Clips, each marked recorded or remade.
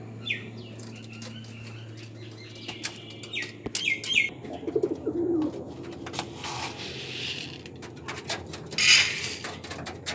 recorded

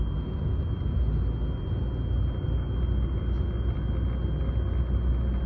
recorded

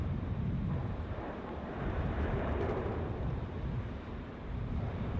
remade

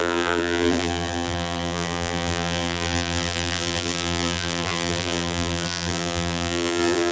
remade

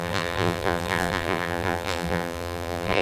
remade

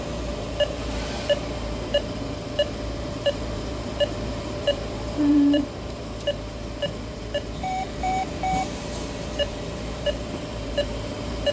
remade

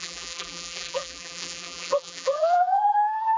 remade